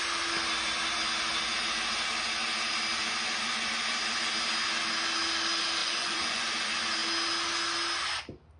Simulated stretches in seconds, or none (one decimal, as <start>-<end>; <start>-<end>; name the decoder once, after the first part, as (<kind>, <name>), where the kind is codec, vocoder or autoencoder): 5.8-6.5 (vocoder, Vocos)

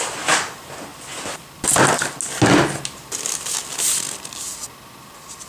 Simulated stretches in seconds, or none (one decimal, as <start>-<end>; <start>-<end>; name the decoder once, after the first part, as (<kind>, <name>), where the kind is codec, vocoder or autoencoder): none

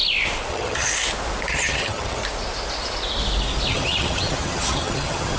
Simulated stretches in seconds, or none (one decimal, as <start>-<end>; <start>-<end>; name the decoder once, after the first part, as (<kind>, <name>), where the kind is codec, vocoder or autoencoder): 0.5-0.9 (vocoder, HiFi-GAN); 1.5-2.2; 3.7-5.4

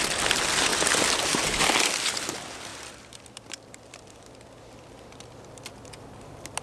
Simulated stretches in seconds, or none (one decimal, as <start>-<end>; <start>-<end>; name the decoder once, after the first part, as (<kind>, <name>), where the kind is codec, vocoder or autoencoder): 2.7-4.5 (vocoder, BigVGAN v2)